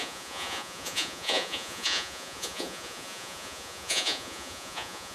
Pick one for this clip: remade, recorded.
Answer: remade